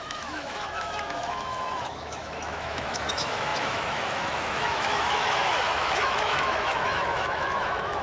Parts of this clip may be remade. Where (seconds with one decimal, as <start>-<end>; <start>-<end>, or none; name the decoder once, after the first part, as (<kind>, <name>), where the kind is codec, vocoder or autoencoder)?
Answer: 0.0-8.0 (autoencoder, DAC-VAE)